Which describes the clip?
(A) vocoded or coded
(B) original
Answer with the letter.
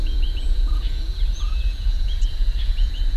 A